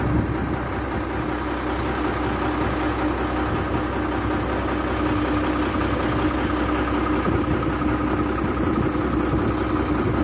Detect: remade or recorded recorded